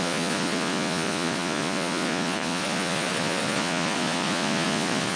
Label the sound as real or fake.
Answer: fake